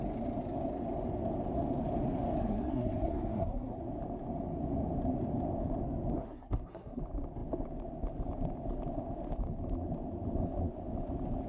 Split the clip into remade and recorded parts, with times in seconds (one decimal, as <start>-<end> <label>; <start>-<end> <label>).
0.0-2.4 recorded; 2.4-3.8 remade; 3.8-6.2 recorded; 6.2-7.0 remade; 7.0-11.5 recorded

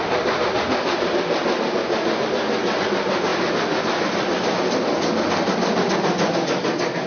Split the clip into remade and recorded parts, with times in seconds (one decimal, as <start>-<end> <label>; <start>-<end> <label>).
0.0-7.1 recorded

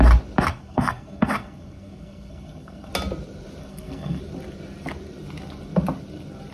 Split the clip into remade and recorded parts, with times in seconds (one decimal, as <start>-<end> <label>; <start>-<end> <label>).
0.0-0.5 recorded; 0.5-2.9 remade; 2.9-3.6 recorded; 3.6-4.2 remade; 4.2-6.5 recorded

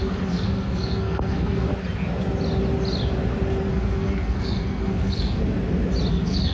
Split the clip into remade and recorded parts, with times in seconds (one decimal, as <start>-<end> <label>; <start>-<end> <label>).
0.0-1.7 remade; 1.7-3.7 recorded; 3.7-5.4 remade; 5.4-6.1 recorded; 6.1-6.5 remade